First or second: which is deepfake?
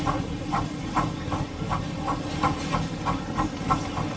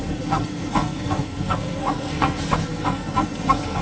second